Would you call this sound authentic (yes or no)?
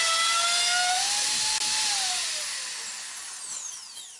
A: yes